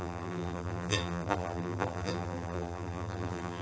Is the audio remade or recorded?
remade